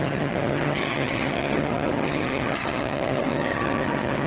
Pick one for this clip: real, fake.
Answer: fake